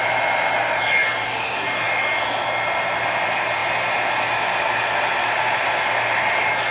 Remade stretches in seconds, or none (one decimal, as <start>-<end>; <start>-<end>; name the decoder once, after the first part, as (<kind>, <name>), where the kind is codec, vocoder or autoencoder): none